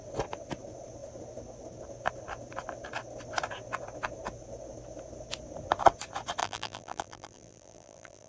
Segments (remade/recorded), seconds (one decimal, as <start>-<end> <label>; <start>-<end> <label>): 0.0-6.4 recorded; 6.4-8.3 remade